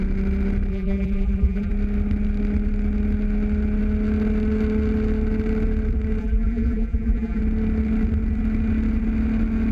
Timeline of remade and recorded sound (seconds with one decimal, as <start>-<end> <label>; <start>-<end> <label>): 0.0-0.7 recorded; 0.7-1.7 remade; 1.7-6.2 recorded; 6.2-7.4 remade; 7.4-9.7 recorded